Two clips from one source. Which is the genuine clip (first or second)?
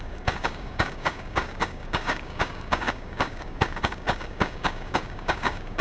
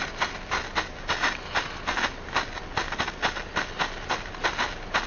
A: second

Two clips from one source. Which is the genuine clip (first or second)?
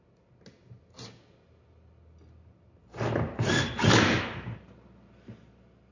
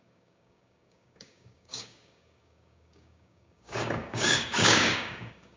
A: first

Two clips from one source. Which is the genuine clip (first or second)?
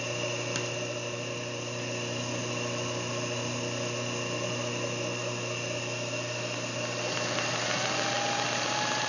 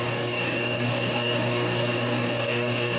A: first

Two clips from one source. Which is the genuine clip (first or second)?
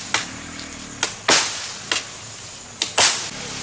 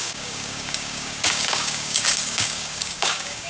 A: first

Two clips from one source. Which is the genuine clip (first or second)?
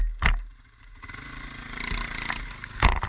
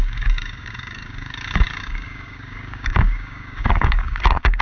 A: first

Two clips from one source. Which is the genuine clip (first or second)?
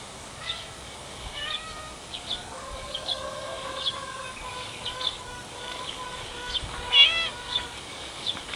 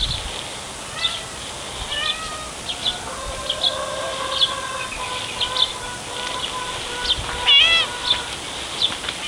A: second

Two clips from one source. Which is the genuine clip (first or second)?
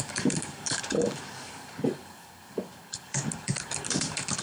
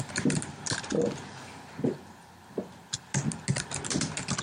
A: second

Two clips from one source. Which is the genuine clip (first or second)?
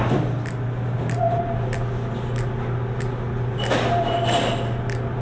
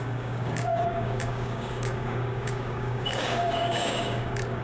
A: first